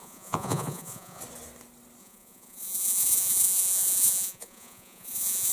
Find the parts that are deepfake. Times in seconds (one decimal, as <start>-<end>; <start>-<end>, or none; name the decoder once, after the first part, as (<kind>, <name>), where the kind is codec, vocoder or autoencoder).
0.0-1.2 (vocoder, Vocos); 2.0-5.5